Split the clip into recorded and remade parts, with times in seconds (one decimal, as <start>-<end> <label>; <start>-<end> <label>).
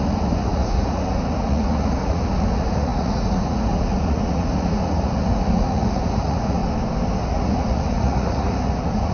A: 0.0-6.6 remade; 6.6-7.2 recorded; 7.2-9.1 remade